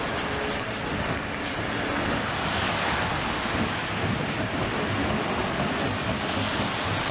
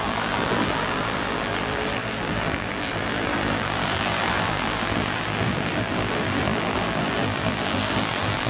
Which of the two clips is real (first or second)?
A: first